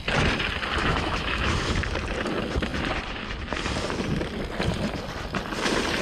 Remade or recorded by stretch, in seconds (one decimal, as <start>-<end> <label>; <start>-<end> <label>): 0.0-0.8 recorded; 0.8-1.5 remade; 1.5-6.0 recorded